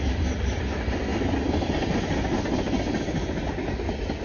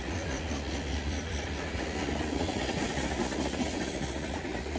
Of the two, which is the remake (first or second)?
second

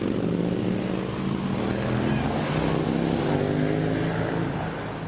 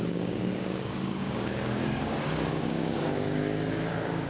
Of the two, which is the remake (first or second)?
second